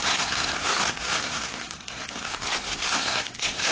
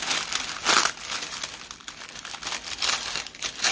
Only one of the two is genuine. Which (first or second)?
second